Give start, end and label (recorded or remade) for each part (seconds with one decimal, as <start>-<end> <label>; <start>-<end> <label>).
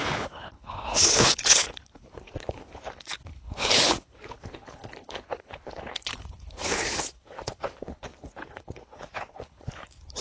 0.0-10.2 remade